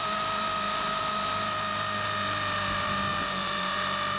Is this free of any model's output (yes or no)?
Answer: no